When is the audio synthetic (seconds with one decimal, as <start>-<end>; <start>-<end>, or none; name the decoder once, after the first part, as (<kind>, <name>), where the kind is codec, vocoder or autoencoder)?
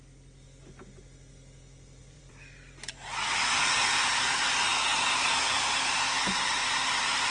2.0-3.6 (vocoder, BigVGAN v2)